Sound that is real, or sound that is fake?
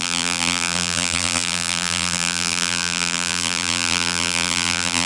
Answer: fake